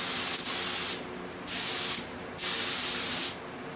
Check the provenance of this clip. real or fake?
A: real